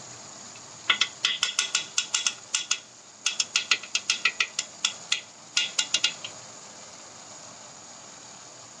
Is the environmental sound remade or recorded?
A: recorded